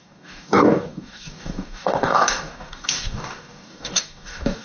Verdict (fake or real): fake